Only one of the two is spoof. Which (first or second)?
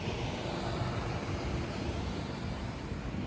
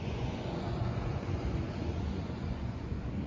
second